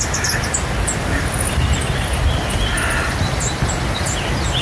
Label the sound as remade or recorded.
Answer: recorded